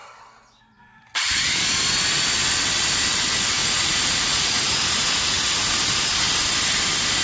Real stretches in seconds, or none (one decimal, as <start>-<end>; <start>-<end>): 0.0-3.6; 5.7-7.2